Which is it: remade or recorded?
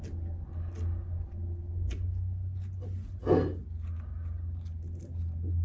recorded